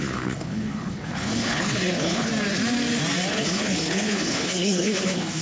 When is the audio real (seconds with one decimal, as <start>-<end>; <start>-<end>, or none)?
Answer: 2.3-3.3